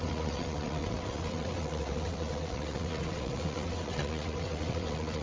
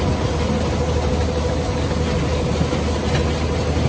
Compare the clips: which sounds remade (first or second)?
first